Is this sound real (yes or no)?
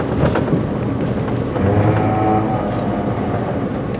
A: yes